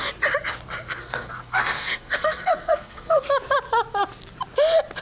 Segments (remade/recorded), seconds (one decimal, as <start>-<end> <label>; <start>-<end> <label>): 0.0-1.0 recorded; 1.0-3.3 remade; 3.3-5.0 recorded